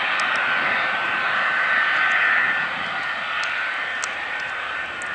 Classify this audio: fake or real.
real